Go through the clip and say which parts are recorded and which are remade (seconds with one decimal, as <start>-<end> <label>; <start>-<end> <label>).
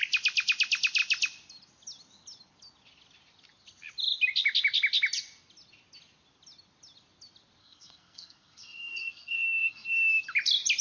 0.0-7.6 recorded; 7.6-10.2 remade; 10.2-10.8 recorded